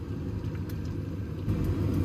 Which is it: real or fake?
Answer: real